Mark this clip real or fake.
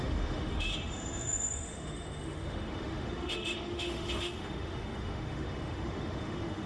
fake